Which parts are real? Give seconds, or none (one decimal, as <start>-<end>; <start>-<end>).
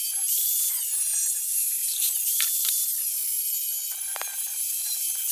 0.0-1.2; 2.7-4.5